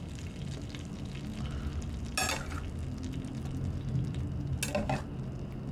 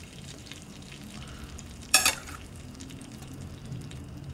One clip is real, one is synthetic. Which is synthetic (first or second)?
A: second